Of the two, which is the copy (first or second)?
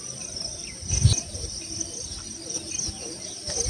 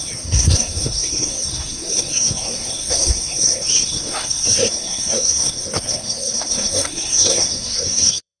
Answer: second